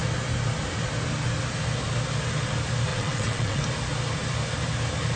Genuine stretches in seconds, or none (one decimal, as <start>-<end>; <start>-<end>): 0.0-2.9; 3.6-5.2